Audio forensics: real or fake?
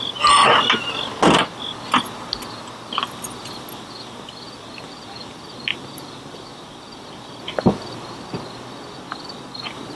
real